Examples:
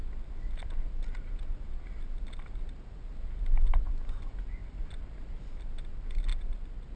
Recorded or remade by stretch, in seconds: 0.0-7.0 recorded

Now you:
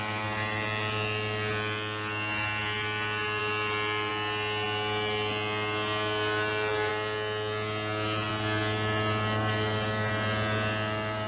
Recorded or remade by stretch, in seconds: 0.0-11.3 recorded